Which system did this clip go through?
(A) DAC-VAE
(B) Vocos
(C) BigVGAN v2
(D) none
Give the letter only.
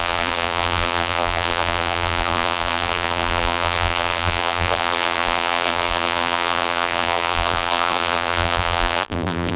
C